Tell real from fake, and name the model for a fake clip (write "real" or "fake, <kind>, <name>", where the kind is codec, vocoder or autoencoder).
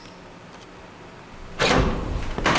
real